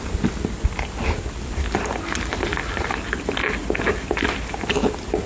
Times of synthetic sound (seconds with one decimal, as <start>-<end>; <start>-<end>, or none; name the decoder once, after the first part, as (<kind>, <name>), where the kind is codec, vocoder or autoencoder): 3.6-4.5 (vocoder, BigVGAN v2)